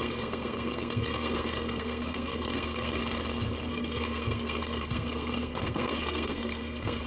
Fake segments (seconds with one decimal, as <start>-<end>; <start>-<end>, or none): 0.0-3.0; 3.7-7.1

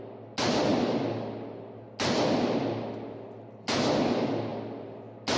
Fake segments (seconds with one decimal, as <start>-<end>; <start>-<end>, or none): none

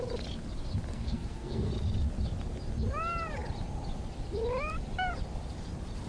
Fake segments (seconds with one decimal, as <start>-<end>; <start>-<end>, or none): 0.9-1.7

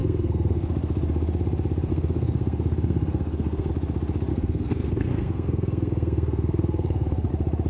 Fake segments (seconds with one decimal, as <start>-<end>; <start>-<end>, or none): 0.0-0.7; 1.9-3.7; 4.3-7.3

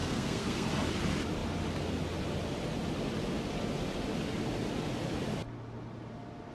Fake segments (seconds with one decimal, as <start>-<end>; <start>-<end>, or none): 0.0-0.7

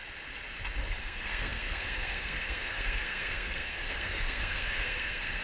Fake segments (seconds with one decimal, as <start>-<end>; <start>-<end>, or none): 1.0-5.4